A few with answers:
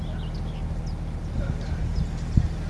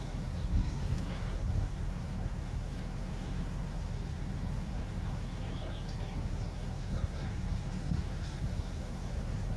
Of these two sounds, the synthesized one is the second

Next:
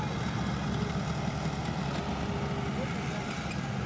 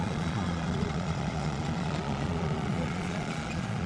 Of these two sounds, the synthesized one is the second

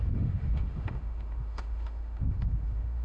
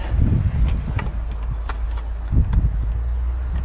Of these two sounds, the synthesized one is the first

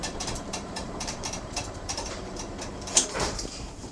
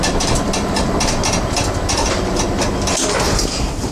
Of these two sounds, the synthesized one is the first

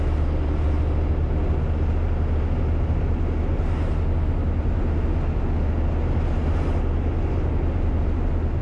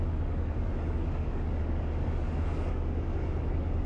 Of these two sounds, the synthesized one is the second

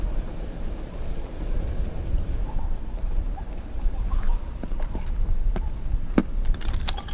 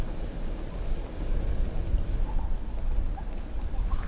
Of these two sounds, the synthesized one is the first